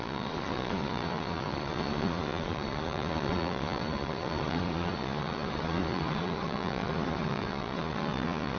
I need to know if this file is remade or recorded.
remade